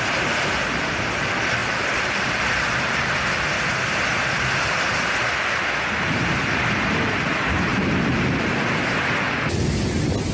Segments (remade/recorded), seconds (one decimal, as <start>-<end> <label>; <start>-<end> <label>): 0.0-1.6 recorded; 1.6-2.7 remade; 2.7-7.7 recorded; 7.7-8.8 remade; 8.8-10.3 recorded